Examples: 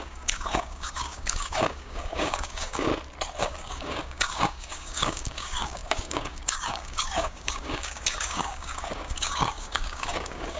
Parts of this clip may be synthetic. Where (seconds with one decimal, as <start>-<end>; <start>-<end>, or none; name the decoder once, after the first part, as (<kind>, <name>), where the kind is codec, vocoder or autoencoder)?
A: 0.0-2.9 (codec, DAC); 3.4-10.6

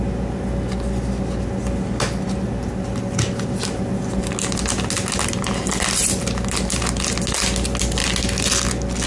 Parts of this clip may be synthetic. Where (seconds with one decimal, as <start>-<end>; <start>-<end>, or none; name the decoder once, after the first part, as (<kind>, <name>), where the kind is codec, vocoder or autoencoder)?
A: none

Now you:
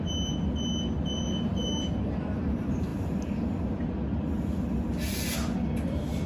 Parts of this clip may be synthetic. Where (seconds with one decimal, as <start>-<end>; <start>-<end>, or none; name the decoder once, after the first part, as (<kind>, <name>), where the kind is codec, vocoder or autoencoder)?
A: none

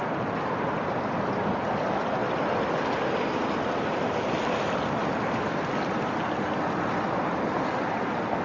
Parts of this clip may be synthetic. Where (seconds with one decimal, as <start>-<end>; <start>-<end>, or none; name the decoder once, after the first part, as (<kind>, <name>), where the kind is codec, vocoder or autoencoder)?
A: none

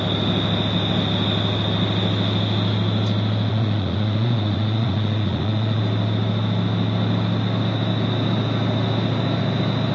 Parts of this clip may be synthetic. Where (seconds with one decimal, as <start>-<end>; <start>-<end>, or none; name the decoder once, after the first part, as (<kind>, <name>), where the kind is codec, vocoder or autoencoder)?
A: 3.5-5.8 (vocoder, Vocos)